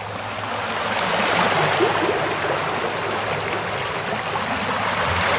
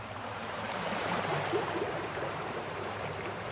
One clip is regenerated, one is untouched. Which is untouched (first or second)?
first